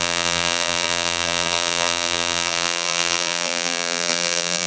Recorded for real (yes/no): no